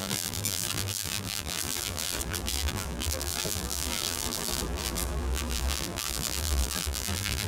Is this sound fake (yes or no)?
yes